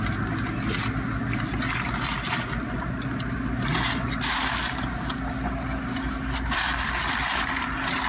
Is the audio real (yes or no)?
yes